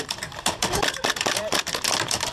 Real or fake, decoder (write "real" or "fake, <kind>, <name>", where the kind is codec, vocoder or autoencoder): fake, vocoder, BigVGAN v2